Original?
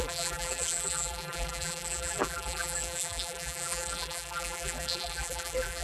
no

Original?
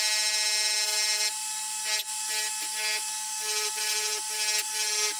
yes